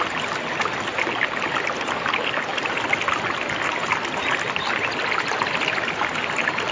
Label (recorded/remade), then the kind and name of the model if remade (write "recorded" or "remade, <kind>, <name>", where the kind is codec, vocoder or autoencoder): recorded